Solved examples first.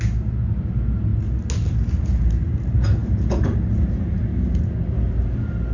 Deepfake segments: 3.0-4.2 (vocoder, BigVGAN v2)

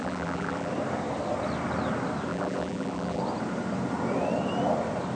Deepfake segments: 0.0-0.7 (vocoder, BigVGAN v2); 2.3-3.2

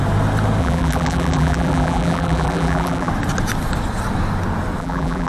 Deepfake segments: 0.6-3.1 (vocoder, BigVGAN v2); 4.8-5.3

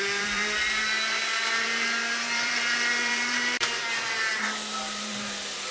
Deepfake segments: 0.0-5.7 (vocoder, BigVGAN v2)